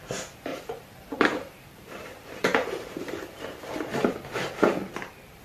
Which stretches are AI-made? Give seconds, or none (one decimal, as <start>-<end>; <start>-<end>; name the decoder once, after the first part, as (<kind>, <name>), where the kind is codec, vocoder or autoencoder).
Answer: 0.5-3.7 (vocoder, BigVGAN v2); 4.8-5.4